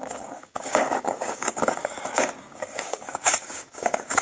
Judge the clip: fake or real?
fake